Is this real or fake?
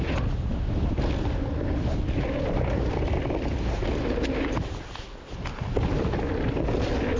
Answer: real